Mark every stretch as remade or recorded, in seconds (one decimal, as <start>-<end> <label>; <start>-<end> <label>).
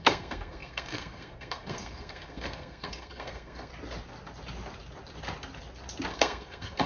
0.0-3.7 remade; 3.7-6.1 recorded; 6.1-6.9 remade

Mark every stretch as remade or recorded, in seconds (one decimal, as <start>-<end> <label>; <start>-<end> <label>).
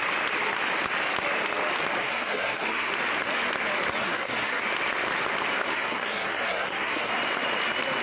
0.0-2.0 recorded; 2.0-2.9 remade; 2.9-4.0 recorded; 4.0-4.6 remade; 4.6-5.7 recorded; 5.7-7.1 remade; 7.1-8.0 recorded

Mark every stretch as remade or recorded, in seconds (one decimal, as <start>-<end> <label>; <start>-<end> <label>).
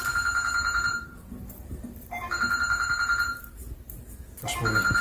0.0-0.6 recorded; 0.6-3.4 remade; 3.4-5.0 recorded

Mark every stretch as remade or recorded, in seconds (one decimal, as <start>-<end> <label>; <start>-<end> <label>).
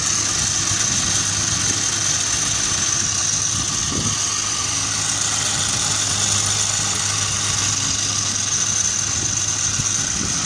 0.0-10.5 recorded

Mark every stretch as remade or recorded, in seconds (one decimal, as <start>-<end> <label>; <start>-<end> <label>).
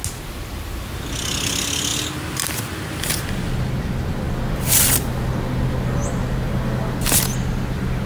0.0-8.1 recorded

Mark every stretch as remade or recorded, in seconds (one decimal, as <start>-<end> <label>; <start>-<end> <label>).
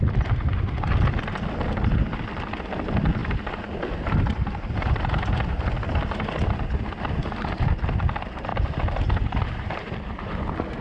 0.0-3.2 recorded; 3.2-6.3 remade; 6.3-8.5 recorded; 8.5-10.4 remade; 10.4-10.8 recorded